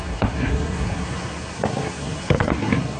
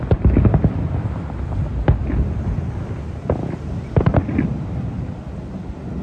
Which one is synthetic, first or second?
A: first